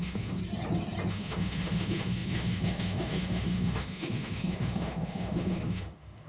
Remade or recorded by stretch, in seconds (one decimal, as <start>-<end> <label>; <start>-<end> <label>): 0.0-0.4 remade; 0.4-1.1 recorded; 1.1-6.3 remade